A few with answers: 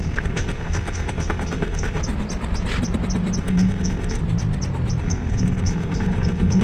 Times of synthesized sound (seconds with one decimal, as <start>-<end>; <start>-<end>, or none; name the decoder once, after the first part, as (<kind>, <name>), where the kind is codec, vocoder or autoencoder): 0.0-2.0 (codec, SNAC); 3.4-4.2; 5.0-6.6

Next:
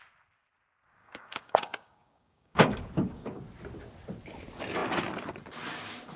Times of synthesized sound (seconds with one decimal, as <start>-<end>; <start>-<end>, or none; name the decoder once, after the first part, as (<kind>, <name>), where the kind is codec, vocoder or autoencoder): 1.0-3.4 (codec, DAC)

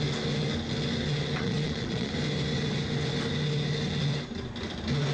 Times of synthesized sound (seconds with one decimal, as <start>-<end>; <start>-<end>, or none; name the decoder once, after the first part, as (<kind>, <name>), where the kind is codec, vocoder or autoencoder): 1.4-2.1 (vocoder, Vocos)

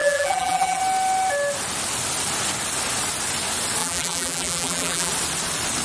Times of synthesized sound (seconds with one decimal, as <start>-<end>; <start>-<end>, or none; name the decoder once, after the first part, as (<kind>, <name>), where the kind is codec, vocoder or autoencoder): 0.0-0.8 (vocoder, BigVGAN v2); 3.8-5.1

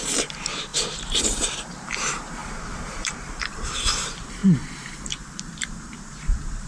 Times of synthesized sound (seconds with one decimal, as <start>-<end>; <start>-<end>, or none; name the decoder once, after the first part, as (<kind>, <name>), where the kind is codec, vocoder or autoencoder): 0.0-6.7 (vocoder, BigVGAN v2)

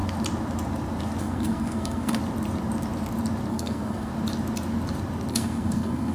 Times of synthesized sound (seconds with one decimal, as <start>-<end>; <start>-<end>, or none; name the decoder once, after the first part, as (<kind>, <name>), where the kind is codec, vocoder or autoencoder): 1.2-2.2 (codec, SNAC); 3.5-4.1; 5.3-6.1